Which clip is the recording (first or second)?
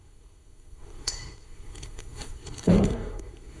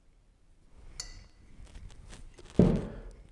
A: second